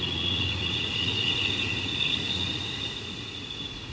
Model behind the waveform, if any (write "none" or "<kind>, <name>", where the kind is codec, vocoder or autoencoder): vocoder, Vocos